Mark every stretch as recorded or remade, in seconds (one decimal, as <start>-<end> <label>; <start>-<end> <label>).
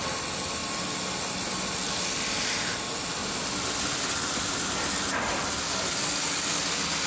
0.0-7.1 recorded